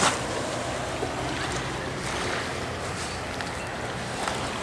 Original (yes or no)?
yes